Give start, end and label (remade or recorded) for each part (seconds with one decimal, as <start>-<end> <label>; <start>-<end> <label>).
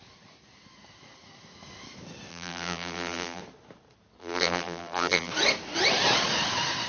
0.0-2.3 recorded; 2.3-3.4 remade; 3.4-4.2 recorded; 4.2-5.3 remade; 5.3-6.9 recorded